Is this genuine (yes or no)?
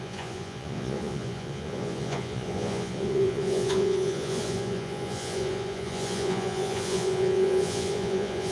no